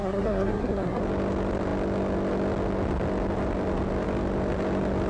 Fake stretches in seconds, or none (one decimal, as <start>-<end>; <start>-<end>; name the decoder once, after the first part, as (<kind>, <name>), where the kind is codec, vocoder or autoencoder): 0.0-1.0 (codec, SNAC)